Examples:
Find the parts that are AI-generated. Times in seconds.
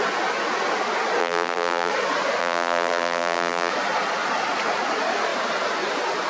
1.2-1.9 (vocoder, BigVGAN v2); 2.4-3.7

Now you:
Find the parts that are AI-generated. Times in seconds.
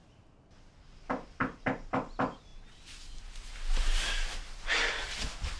none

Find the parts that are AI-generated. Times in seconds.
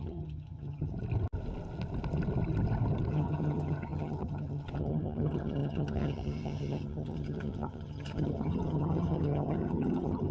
0.0-0.9 (vocoder, HiFi-GAN); 3.1-10.3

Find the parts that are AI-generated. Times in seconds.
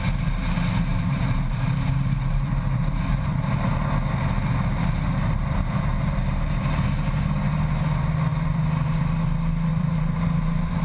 0.9-3.5 (vocoder, BigVGAN v2); 8.3-9.0; 9.7-10.8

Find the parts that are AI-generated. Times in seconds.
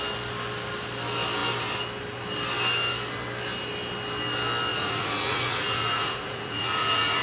4.7-7.2 (vocoder, Vocos)